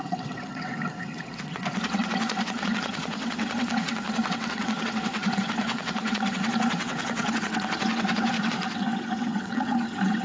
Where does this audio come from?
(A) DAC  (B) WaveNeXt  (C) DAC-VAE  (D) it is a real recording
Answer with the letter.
B